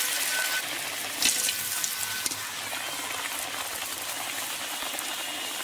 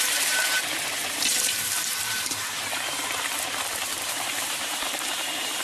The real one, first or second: first